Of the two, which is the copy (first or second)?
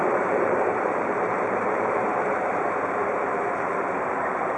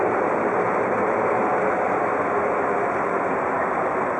first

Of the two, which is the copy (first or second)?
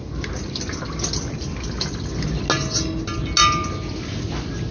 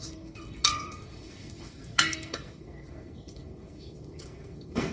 second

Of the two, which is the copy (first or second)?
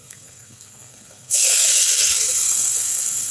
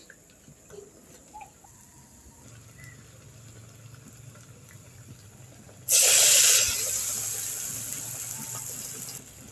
first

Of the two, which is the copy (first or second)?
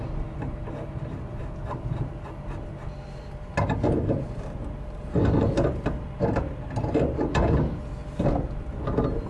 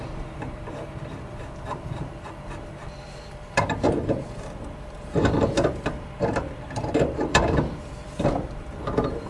second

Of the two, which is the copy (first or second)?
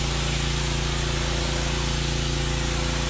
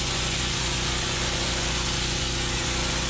second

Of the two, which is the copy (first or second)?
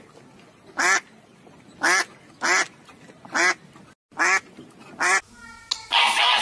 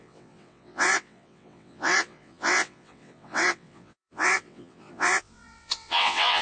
second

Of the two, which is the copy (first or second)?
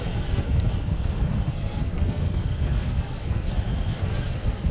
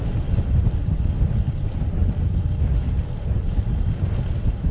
first